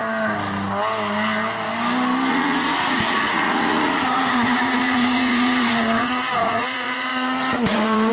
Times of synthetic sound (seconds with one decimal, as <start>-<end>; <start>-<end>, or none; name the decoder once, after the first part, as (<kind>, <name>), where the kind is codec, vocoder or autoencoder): 2.3-8.1 (vocoder, Vocos)